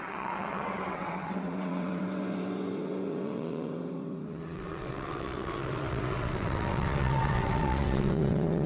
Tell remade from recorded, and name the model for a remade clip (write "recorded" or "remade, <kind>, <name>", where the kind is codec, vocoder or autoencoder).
remade, vocoder, WaveNeXt